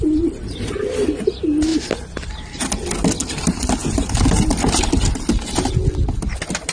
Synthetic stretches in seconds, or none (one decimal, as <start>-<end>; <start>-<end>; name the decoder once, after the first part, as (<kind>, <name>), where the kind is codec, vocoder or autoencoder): none